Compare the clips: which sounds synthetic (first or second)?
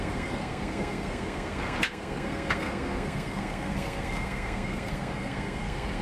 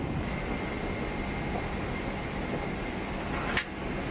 first